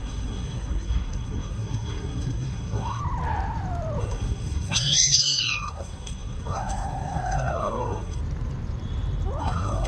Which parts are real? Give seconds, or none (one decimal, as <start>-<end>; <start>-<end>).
3.0-4.0; 8.2-9.4